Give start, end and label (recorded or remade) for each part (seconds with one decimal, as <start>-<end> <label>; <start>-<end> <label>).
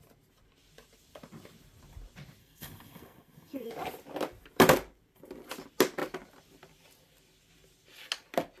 0.0-2.4 recorded; 2.4-3.7 remade; 3.7-8.6 recorded